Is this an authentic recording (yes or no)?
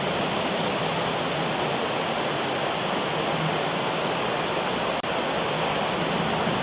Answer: yes